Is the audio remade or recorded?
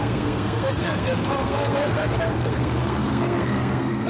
remade